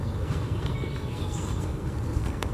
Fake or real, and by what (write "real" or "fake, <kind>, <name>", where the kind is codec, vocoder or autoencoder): fake, codec, SNAC